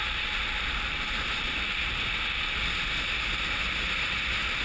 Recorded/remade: recorded